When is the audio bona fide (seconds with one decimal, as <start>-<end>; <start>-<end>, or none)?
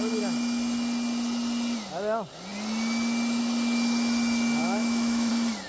0.0-4.6; 5.3-5.7